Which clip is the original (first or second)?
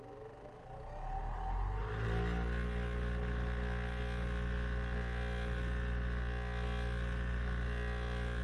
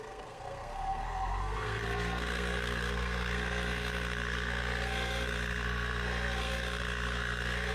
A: first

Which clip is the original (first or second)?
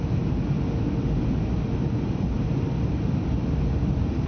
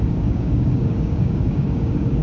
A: first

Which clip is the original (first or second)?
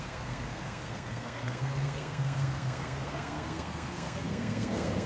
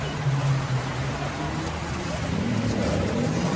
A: second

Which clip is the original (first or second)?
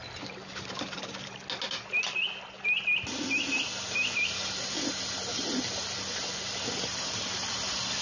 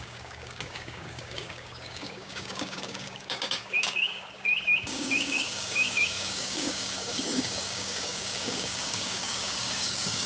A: first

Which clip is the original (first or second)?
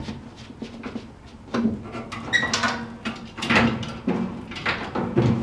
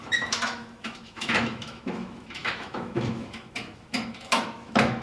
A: first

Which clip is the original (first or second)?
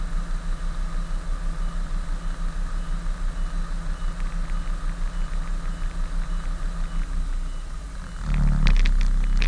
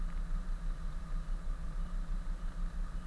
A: first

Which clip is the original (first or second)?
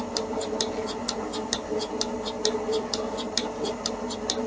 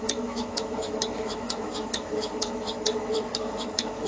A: first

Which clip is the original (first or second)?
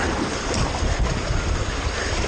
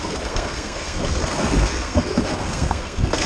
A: first